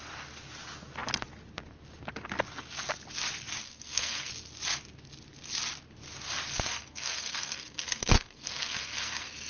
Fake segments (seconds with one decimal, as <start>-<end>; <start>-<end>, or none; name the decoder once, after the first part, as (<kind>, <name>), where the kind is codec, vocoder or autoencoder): 3.6-4.3 (codec, SNAC); 6.7-9.5